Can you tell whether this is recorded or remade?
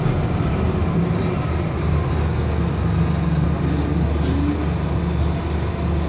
recorded